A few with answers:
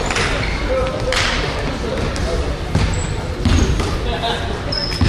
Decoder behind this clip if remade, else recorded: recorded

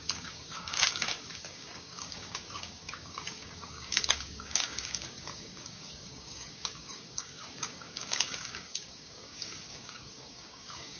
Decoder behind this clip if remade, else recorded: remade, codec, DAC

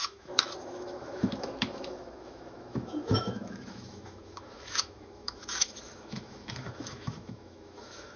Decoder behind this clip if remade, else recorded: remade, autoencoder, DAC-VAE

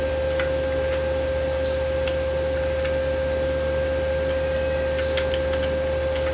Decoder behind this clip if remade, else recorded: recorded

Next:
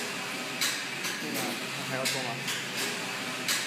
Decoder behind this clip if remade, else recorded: recorded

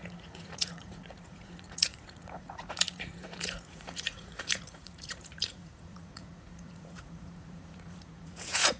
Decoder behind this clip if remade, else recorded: remade, vocoder, Vocos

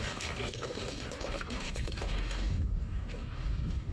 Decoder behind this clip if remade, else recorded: remade, codec, DAC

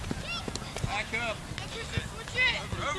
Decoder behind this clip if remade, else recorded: recorded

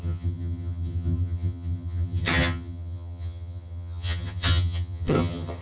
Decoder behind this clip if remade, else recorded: remade, vocoder, HiFi-GAN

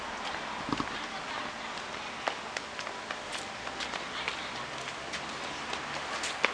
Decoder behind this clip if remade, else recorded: recorded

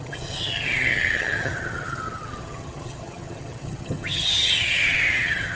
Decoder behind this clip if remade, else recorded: remade, vocoder, HiFi-GAN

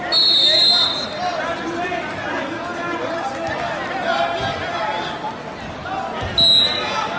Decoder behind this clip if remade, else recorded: recorded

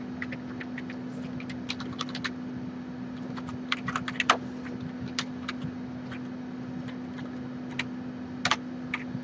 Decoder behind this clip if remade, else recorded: recorded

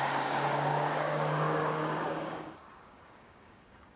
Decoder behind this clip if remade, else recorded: remade, codec, DAC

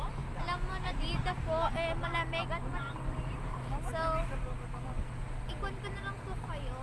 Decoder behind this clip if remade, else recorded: recorded